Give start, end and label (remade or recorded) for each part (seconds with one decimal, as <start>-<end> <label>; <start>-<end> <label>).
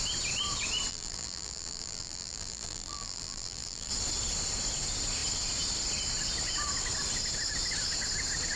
0.0-0.9 recorded; 0.9-3.9 remade; 3.9-8.6 recorded